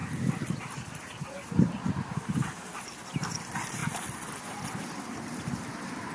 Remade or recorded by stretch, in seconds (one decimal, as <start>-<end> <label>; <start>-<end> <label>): 0.0-1.9 recorded; 1.9-3.8 remade; 3.8-4.4 recorded; 4.4-6.1 remade